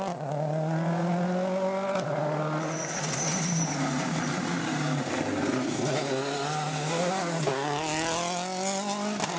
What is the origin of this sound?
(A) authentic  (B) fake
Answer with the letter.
A